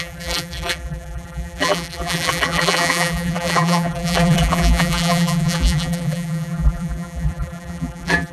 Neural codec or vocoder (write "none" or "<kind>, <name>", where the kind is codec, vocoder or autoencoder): vocoder, BigVGAN v2